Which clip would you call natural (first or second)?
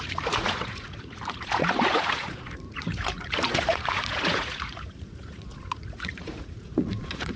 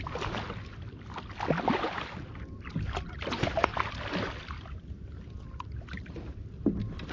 second